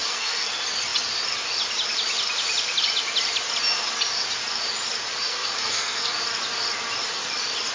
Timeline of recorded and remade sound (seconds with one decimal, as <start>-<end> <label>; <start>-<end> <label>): 0.0-0.5 remade; 0.5-5.2 recorded; 5.2-6.1 remade; 6.1-7.7 recorded